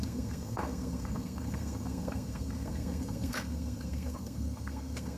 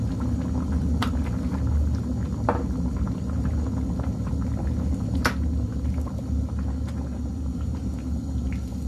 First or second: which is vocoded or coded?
first